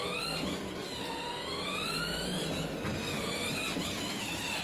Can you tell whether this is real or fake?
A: real